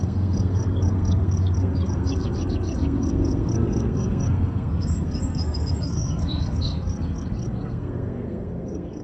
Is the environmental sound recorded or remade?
remade